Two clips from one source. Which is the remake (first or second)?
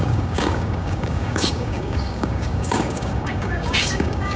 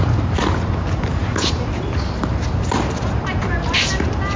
first